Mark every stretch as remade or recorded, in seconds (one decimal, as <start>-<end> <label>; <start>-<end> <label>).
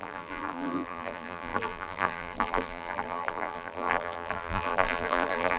0.0-5.6 remade